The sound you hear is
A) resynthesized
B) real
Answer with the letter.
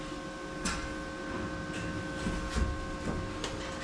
B